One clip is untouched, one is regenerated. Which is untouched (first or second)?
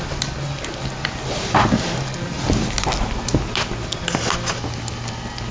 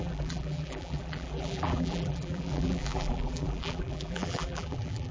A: first